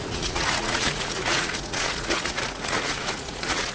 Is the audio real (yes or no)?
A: no